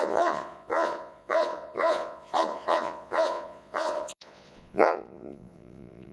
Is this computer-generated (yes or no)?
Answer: yes